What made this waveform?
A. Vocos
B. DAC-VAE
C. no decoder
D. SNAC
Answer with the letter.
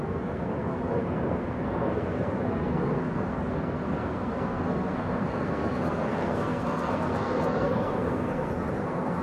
D